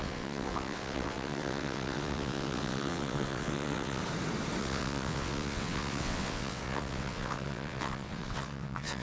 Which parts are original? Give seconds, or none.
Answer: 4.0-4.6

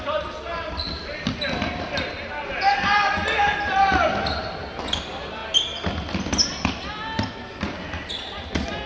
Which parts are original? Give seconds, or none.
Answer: 0.0-8.9

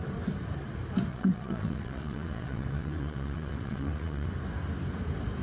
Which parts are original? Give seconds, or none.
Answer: 0.0-1.1; 4.3-5.4

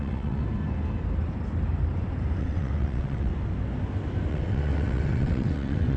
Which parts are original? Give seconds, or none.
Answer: 0.4-2.4; 3.3-4.3

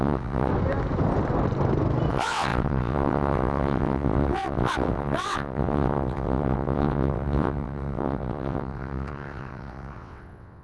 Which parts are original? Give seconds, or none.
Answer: 0.5-2.1

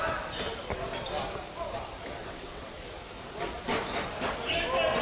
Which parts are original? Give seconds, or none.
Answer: 0.0-2.2; 2.8-5.0

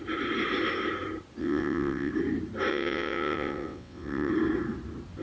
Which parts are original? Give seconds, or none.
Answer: 0.0-1.4; 2.1-2.7; 4.3-5.2

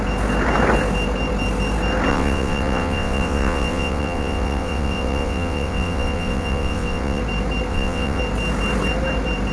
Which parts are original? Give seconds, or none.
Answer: 0.0-2.1; 7.2-7.7; 8.2-9.5